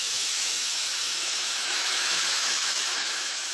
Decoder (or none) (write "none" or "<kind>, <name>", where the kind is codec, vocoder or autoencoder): autoencoder, DAC-VAE